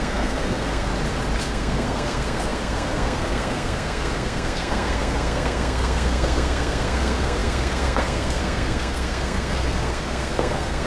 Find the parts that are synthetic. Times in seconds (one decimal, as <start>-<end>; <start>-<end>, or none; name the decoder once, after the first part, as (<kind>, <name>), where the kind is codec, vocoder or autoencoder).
0.0-0.9 (codec, SNAC); 1.4-10.9